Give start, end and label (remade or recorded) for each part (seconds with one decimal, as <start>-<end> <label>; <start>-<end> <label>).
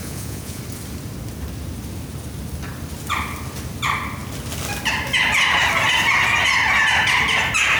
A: 0.0-0.6 remade; 0.6-7.8 recorded